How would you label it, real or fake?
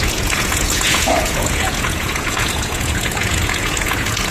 fake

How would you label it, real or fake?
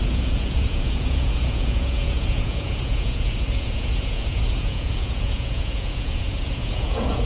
fake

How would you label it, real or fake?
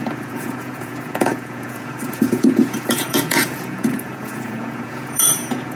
fake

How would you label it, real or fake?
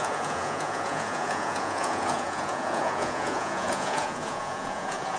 fake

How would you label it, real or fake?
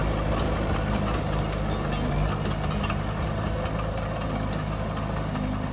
real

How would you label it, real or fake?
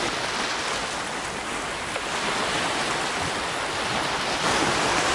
real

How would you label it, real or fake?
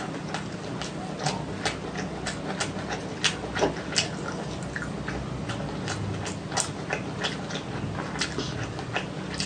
real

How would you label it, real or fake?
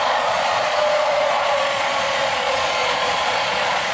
fake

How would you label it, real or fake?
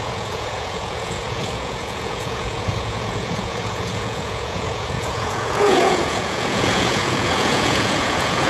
fake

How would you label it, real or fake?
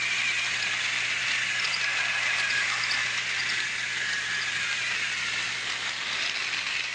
real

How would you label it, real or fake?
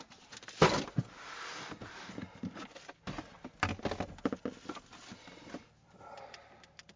real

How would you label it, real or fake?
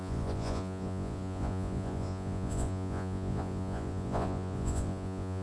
fake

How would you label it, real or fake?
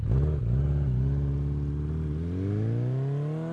real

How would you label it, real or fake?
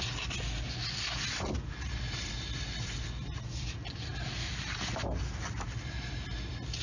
real